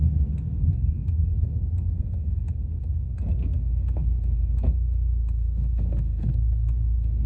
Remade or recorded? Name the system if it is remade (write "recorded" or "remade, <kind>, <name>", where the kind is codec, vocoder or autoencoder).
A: remade, codec, SNAC